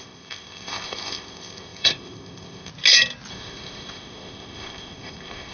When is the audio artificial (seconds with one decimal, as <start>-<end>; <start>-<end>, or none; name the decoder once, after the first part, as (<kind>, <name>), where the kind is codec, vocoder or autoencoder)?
0.0-2.7 (codec, ZipCodec); 3.3-5.5